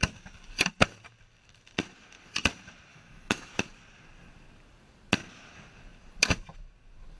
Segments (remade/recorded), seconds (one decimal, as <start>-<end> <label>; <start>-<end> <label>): 0.0-2.9 recorded; 2.9-3.5 remade; 3.5-7.2 recorded